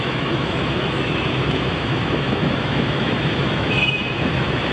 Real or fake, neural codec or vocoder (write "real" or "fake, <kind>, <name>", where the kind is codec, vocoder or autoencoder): fake, autoencoder, DAC-VAE